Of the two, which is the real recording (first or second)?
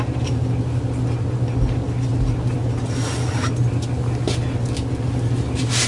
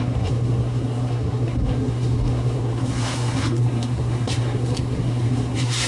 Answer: first